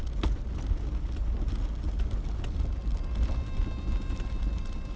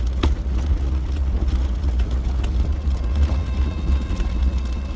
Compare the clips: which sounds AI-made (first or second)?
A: second